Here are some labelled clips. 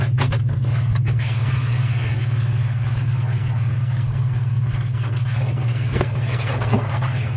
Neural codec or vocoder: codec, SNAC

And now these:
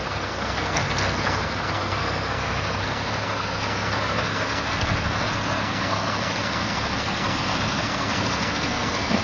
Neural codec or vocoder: codec, SNAC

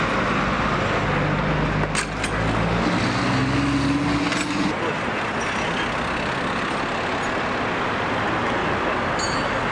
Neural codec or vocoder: none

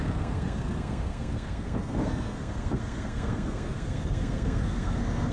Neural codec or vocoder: codec, SNAC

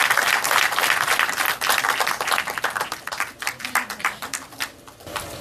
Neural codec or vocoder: none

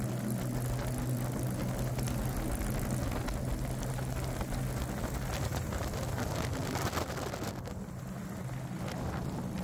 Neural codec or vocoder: none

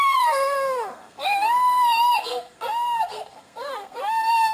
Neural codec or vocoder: codec, SNAC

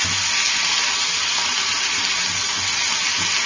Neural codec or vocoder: none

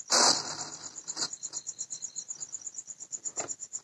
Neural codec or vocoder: none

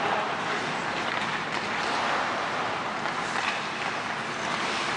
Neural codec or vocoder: none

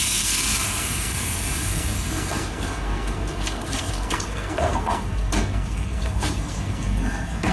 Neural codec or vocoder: codec, SNAC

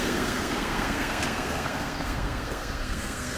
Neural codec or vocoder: codec, SNAC